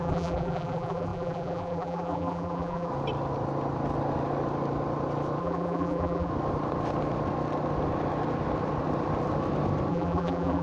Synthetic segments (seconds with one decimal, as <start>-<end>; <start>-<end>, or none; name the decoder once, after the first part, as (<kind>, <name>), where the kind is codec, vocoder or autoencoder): 0.0-2.9 (vocoder, BigVGAN v2); 5.4-6.3; 9.9-10.6

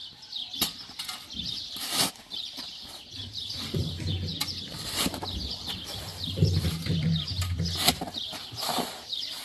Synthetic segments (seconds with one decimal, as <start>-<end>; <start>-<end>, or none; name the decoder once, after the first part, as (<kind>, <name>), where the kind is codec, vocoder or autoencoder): 2.1-4.3 (vocoder, BigVGAN v2); 5.2-9.4

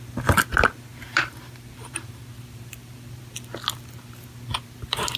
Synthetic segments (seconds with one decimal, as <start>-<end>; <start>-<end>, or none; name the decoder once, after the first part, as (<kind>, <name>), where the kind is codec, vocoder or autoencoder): 0.9-3.2 (vocoder, BigVGAN v2); 4.5-5.2

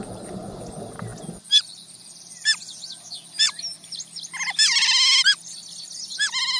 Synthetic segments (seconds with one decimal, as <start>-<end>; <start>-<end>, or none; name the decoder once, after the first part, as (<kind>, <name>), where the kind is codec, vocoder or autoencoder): none